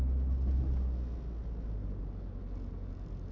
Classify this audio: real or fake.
real